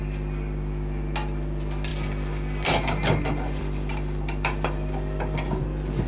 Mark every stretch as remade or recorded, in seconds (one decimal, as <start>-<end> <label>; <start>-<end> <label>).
0.0-1.9 recorded; 1.9-5.6 remade; 5.6-6.1 recorded